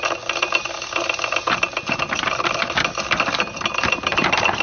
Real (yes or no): yes